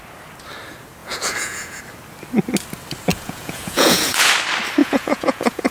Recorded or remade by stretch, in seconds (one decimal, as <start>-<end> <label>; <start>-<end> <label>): 0.0-1.0 recorded; 1.0-1.8 remade; 1.8-3.1 recorded; 3.1-4.3 remade; 4.3-4.8 recorded; 4.8-5.7 remade